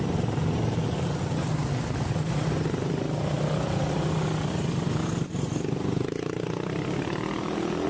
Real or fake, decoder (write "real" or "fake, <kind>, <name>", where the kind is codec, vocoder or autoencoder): real